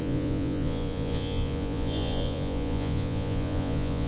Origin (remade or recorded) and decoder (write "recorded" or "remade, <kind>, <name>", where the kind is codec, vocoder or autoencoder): remade, vocoder, Vocos